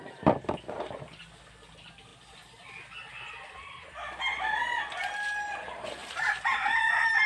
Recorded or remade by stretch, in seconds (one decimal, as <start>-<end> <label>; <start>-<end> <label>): 0.0-7.3 recorded